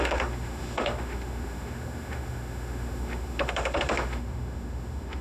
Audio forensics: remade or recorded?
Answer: remade